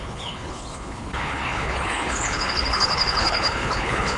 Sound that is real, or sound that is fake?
fake